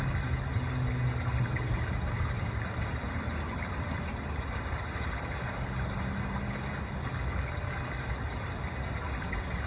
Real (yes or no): yes